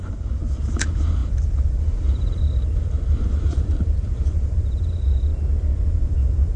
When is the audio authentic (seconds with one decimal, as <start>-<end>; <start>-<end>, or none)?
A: 5.3-5.9